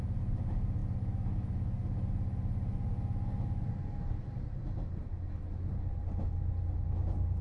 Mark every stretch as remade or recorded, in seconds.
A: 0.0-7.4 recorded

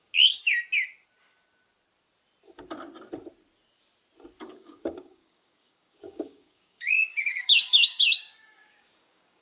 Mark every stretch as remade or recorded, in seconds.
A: 0.0-0.5 remade; 0.5-4.5 recorded; 4.5-9.4 remade

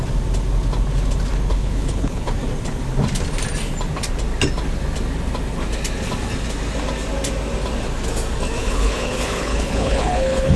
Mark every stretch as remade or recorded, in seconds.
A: 0.0-1.5 recorded; 1.5-2.3 remade; 2.3-8.6 recorded; 8.6-10.6 remade

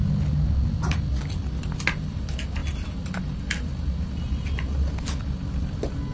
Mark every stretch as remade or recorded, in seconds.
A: 0.0-6.1 recorded

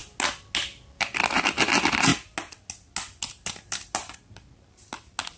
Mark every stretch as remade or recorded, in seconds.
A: 0.0-5.4 recorded